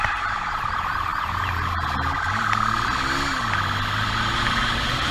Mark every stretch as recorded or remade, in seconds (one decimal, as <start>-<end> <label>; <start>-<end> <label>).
0.0-5.1 recorded